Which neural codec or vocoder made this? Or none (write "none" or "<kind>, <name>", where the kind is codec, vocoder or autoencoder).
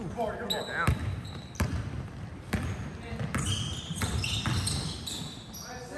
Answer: none